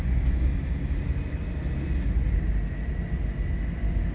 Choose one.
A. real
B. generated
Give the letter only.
A